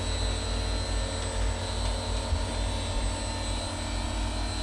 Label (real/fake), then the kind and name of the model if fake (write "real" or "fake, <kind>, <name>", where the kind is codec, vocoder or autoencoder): real